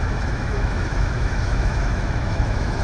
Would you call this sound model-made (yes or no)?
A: yes